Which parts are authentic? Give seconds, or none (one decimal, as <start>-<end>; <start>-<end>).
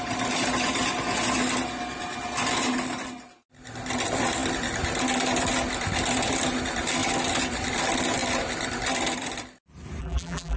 0.0-10.0